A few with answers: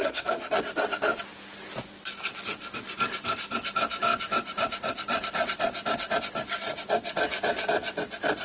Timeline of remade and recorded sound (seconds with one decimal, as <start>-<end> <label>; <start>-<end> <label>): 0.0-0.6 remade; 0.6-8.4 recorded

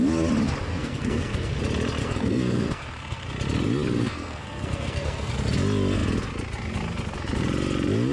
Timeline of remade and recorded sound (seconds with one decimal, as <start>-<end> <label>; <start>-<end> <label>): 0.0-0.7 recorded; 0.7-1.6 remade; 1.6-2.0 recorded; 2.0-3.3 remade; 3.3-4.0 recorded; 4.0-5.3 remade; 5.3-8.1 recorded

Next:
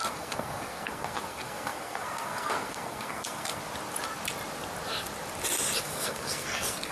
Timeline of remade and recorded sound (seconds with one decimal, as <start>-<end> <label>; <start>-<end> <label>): 0.0-3.6 remade; 3.6-5.8 recorded; 5.8-6.9 remade

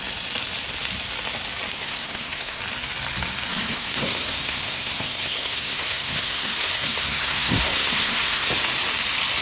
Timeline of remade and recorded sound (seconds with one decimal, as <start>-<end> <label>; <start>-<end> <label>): 0.0-1.7 recorded; 1.7-2.6 remade; 2.6-3.5 recorded; 3.5-8.5 remade; 8.5-9.4 recorded

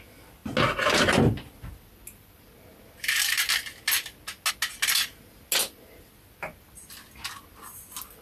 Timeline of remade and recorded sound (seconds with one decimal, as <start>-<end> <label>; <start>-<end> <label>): 0.0-8.2 recorded

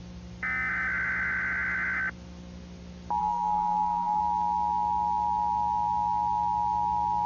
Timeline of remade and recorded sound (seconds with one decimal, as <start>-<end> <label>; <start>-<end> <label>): 0.0-3.2 recorded; 3.2-4.2 remade; 4.2-7.3 recorded

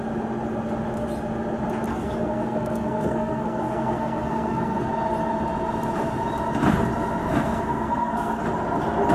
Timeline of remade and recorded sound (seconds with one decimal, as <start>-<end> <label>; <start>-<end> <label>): 0.0-1.9 recorded; 1.9-4.9 remade; 4.9-7.2 recorded; 7.2-8.4 remade; 8.4-9.1 recorded

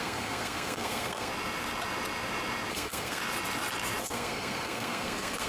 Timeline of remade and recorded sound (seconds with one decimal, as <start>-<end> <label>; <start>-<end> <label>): 0.0-1.3 remade; 1.3-2.7 recorded; 2.7-3.2 remade; 3.2-4.0 recorded; 4.0-5.5 remade